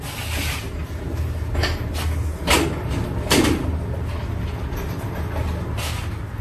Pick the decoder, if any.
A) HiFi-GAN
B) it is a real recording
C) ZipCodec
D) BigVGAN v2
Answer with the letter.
B